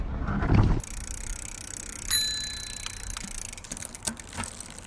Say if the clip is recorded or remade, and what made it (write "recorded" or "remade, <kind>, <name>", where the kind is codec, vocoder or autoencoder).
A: recorded